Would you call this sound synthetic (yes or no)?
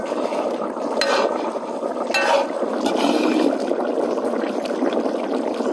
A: no